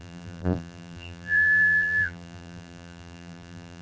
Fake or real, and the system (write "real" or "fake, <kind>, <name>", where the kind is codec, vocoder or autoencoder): fake, vocoder, BigVGAN v2